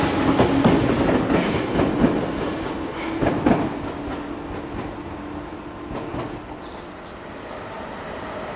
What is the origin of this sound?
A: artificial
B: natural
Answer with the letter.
B